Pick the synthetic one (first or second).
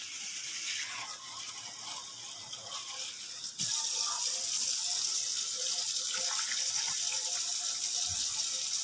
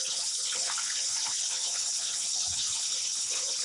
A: second